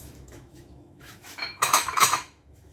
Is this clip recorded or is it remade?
remade